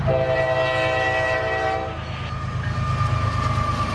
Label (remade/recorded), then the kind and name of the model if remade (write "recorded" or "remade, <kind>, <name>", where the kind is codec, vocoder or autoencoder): recorded